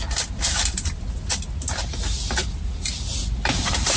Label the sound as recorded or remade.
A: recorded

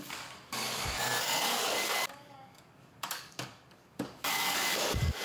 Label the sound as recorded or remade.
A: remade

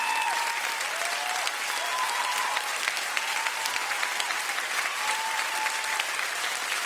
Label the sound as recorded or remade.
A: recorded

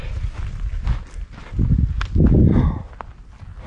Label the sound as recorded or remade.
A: recorded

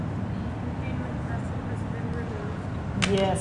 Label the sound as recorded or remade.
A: recorded